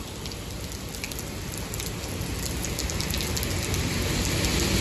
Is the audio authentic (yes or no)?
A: yes